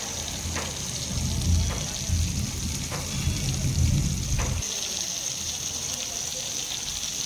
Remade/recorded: recorded